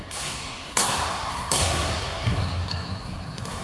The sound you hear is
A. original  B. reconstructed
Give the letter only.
B